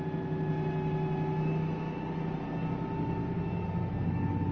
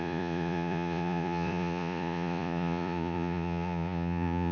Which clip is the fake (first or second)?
second